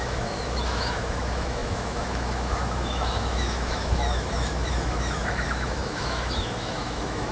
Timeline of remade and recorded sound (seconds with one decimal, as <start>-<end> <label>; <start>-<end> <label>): 0.0-7.3 remade

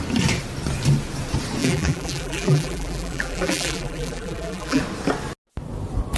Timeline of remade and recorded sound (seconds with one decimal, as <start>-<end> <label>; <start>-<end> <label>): 0.0-1.6 recorded; 1.6-4.8 remade; 4.8-6.2 recorded

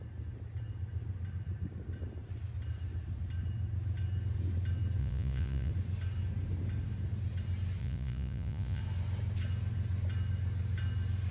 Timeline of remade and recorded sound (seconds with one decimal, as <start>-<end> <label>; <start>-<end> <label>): 0.0-5.0 recorded; 5.0-5.7 remade; 5.7-7.8 recorded; 7.8-8.8 remade; 8.8-11.3 recorded